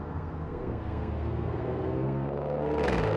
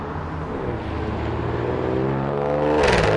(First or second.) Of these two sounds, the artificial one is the first